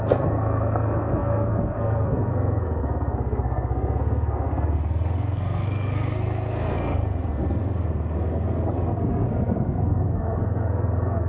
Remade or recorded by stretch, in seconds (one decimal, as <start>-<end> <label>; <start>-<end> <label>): 0.0-11.3 remade